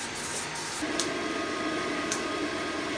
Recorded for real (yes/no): no